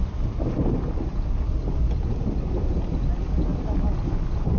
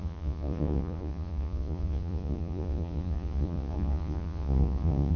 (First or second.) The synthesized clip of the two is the second